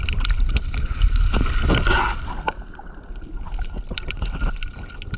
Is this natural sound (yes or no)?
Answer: yes